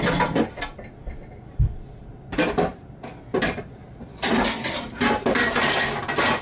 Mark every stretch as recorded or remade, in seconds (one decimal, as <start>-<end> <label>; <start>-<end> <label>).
0.0-6.4 recorded